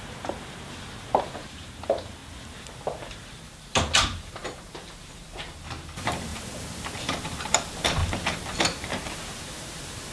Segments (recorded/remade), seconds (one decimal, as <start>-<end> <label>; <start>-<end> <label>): 0.0-2.2 remade; 2.2-2.8 recorded; 2.8-10.1 remade